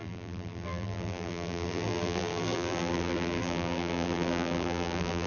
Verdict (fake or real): fake